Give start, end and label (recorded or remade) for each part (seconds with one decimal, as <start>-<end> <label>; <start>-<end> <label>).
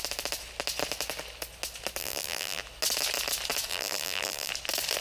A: 0.0-2.0 recorded; 2.0-2.6 remade; 2.6-3.7 recorded; 3.7-4.5 remade; 4.5-5.0 recorded